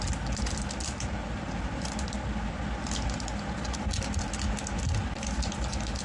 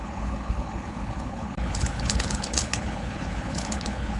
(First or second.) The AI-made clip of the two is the second